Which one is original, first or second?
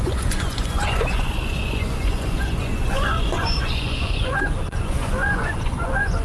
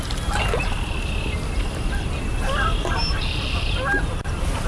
second